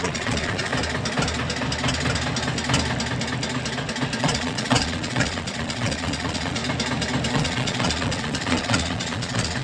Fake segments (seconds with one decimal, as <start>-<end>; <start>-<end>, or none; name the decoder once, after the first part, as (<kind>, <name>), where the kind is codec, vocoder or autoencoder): 0.0-0.7 (vocoder, Vocos); 4.2-6.6; 7.3-9.6